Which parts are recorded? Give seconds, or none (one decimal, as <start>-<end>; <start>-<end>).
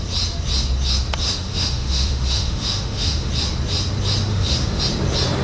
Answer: 0.0-1.2; 3.3-4.3; 4.8-5.4